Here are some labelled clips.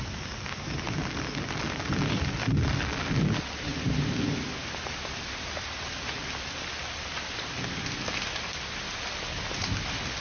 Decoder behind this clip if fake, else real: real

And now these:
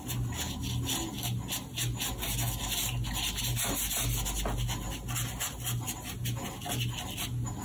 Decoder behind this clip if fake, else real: real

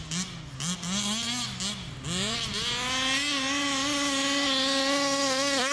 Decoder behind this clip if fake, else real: real